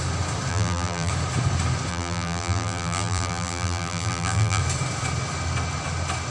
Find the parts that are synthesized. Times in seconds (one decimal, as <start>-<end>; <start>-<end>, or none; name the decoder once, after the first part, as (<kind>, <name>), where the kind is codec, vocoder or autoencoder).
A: 0.5-1.1 (vocoder, BigVGAN v2); 1.9-4.6

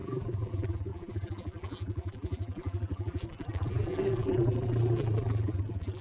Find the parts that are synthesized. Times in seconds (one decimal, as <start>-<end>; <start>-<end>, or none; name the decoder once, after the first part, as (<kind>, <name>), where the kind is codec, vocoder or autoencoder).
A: 0.0-6.0 (vocoder, BigVGAN v2)

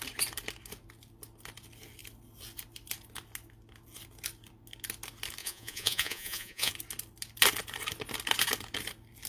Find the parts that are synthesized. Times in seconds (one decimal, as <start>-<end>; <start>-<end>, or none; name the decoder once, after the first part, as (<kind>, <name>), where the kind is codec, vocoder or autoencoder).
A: 5.4-6.7 (vocoder, Vocos)

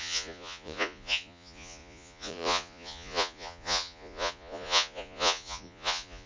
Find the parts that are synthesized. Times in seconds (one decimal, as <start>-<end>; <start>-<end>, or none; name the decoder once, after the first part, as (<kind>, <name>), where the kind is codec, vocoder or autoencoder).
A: 0.0-6.3 (vocoder, Vocos)

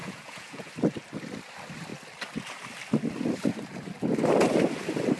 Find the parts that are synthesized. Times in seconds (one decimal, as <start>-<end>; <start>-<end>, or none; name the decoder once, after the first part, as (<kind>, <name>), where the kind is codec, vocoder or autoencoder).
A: 0.0-0.7 (vocoder, Vocos)

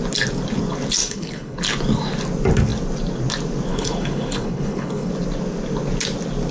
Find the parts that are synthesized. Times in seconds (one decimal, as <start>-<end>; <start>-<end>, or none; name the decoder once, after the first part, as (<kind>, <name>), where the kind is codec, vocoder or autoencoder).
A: 1.0-1.6 (codec, HILCodec); 3.7-5.1

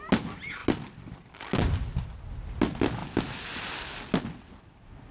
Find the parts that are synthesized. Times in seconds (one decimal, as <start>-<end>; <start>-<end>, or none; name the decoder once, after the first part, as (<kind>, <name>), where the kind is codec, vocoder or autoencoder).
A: none